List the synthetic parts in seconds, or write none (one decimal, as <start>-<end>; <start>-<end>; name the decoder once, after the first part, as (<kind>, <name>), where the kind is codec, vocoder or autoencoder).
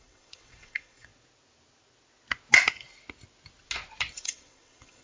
0.0-1.1 (vocoder, WaveNeXt); 4.1-5.0